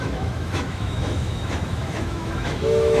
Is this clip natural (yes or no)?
no